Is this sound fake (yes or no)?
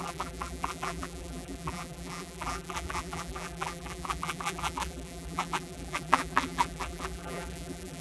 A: yes